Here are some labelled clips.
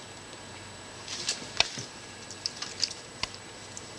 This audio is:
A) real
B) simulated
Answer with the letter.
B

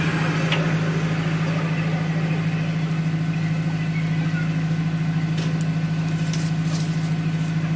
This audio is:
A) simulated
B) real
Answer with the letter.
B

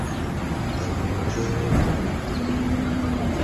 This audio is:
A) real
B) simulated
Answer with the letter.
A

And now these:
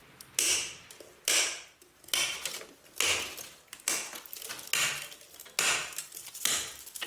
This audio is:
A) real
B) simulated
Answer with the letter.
A